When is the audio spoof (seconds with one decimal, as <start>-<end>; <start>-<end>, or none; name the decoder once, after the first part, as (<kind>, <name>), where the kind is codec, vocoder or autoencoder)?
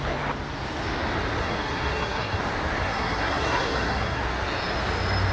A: 1.4-2.4 (codec, SNAC); 2.8-4.2